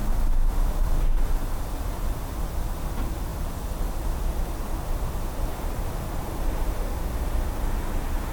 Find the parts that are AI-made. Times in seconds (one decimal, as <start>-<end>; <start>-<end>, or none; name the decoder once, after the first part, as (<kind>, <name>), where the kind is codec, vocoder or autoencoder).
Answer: 5.5-6.9 (vocoder, BigVGAN v2)